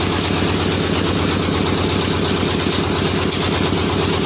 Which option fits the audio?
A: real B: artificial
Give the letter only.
A